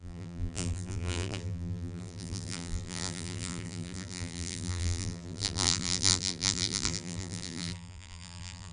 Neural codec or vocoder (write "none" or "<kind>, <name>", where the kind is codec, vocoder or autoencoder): vocoder, BigVGAN v2